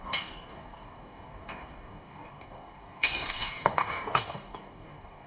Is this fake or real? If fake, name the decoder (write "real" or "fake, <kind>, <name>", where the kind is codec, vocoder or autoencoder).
fake, codec, DAC